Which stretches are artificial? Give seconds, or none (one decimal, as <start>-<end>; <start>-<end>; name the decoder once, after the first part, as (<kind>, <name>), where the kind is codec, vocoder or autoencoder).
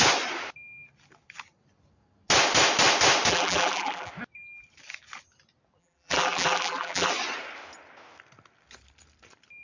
3.3-4.1 (vocoder, BigVGAN v2); 5.8-7.1